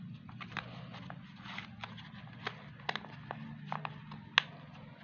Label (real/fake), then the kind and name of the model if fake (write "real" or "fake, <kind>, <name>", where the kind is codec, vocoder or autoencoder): real